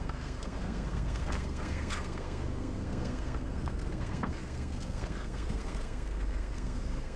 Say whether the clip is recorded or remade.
remade